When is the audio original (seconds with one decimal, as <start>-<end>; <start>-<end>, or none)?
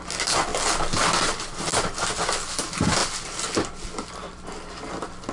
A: 0.0-3.0; 4.1-5.3